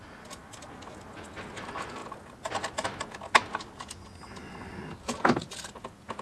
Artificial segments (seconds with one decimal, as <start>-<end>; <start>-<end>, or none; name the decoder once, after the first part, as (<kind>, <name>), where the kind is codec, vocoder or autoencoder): none